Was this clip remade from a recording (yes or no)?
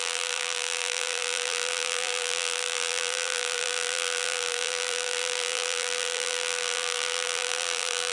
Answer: yes